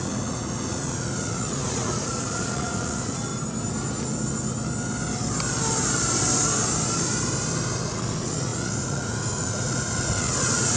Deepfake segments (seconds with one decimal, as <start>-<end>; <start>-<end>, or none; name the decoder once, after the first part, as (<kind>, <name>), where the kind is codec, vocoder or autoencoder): 0.0-3.3 (vocoder, Vocos); 7.9-10.8